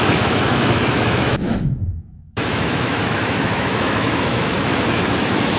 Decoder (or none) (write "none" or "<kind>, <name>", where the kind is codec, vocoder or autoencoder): autoencoder, DAC-VAE